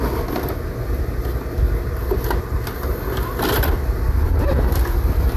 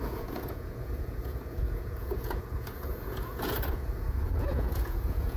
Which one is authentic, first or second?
first